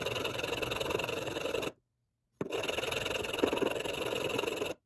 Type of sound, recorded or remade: recorded